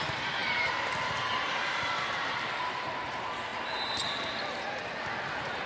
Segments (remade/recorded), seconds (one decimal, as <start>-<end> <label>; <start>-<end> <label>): 0.0-0.4 recorded; 0.4-2.6 remade; 2.6-3.5 recorded; 3.5-4.3 remade; 4.3-5.7 recorded